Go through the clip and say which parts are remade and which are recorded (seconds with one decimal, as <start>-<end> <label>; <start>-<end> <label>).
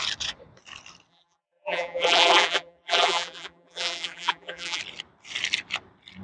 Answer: 0.0-1.1 recorded; 1.1-4.8 remade; 4.8-6.2 recorded